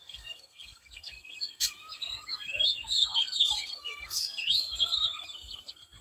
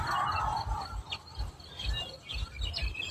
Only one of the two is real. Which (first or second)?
second